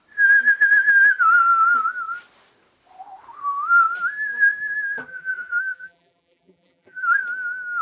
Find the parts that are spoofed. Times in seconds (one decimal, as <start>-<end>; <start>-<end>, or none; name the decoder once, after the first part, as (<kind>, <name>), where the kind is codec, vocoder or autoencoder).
5.1-7.2 (vocoder, BigVGAN v2)